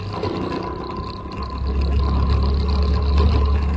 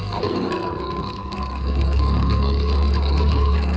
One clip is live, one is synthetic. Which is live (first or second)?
first